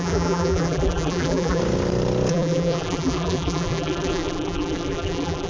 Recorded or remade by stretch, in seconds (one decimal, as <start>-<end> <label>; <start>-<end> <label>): 0.0-1.6 remade; 1.6-2.3 recorded; 2.3-5.5 remade